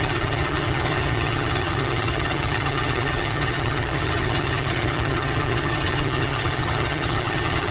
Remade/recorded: remade